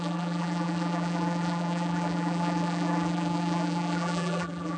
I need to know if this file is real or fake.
fake